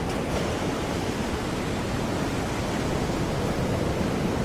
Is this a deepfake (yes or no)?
no